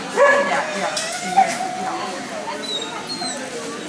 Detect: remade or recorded recorded